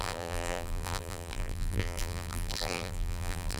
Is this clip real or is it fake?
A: fake